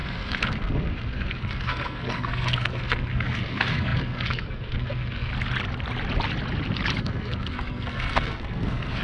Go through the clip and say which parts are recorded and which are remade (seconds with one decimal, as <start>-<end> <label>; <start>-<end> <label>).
0.0-5.3 remade; 5.3-7.0 recorded; 7.0-9.0 remade